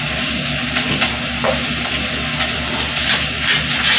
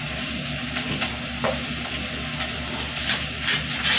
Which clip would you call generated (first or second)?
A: second